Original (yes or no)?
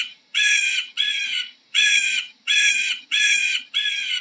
no